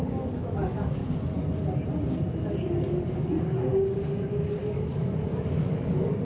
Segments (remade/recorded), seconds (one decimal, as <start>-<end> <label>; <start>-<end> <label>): 0.0-1.0 remade; 1.0-2.6 recorded; 2.6-3.7 remade; 3.7-4.5 recorded; 4.5-6.2 remade